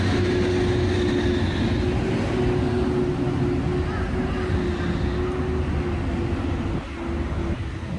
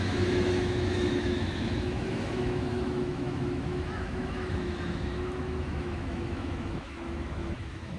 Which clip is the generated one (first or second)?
second